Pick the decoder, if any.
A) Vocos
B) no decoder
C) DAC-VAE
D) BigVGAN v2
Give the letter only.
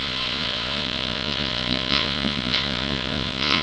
A